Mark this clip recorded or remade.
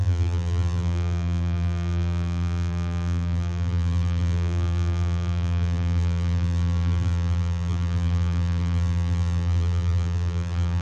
remade